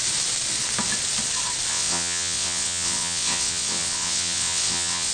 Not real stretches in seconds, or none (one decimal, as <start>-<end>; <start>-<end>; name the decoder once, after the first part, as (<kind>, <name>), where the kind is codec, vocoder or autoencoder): 1.7-5.1 (vocoder, WaveNeXt)